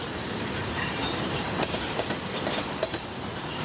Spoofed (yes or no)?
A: yes